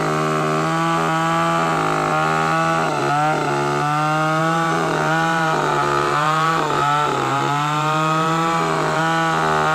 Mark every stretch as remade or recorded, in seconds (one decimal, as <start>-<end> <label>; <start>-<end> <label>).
0.0-4.4 recorded; 4.4-9.0 remade; 9.0-9.7 recorded